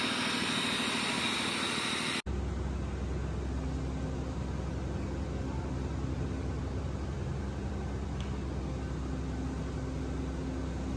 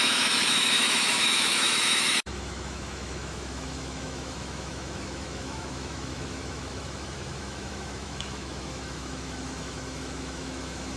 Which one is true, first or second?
first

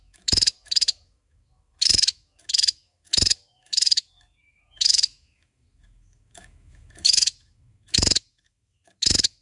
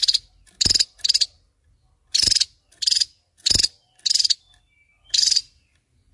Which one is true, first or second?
second